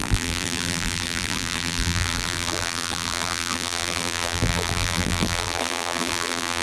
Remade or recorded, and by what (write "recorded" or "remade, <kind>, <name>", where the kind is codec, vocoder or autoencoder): remade, vocoder, BigVGAN v2